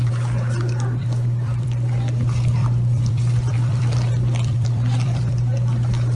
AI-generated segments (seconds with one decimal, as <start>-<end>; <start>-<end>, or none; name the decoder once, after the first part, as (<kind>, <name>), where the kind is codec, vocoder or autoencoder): 1.0-1.9 (vocoder, BigVGAN v2); 2.6-5.3